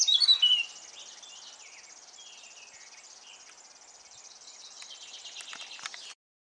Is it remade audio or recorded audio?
recorded